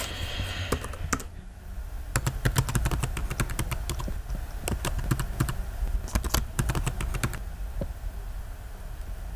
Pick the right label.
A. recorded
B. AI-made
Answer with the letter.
A